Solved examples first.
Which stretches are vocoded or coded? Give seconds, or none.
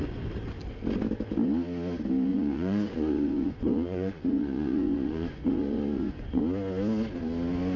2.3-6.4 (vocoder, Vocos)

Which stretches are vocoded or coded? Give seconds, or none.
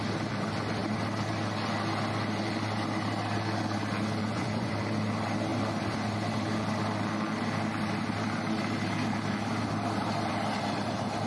4.2-4.7 (vocoder, Vocos)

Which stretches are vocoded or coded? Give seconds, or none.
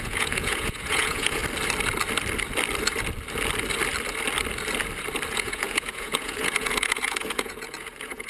0.0-1.4 (vocoder, Vocos); 5.3-8.3